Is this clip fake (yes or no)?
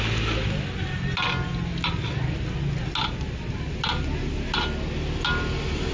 no